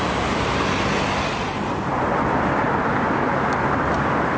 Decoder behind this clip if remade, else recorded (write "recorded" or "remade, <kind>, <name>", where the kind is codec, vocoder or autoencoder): recorded